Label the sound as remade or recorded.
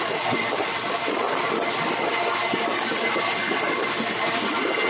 recorded